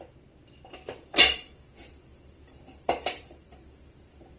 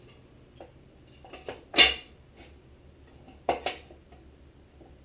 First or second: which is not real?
first